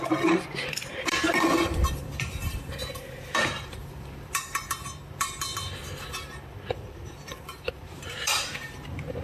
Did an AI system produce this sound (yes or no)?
yes